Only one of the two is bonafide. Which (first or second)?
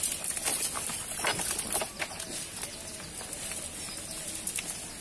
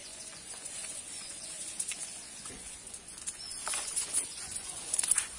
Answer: first